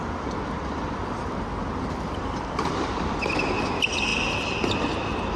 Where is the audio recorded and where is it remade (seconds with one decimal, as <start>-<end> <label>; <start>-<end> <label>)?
0.0-2.2 recorded; 2.2-3.6 remade; 3.6-5.4 recorded